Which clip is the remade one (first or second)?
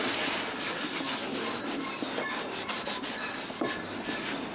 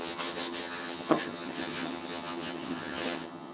second